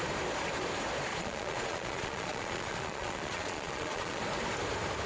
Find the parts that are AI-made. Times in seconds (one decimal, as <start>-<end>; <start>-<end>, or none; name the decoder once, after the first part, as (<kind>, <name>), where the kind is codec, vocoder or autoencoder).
1.1-4.2 (vocoder, Vocos)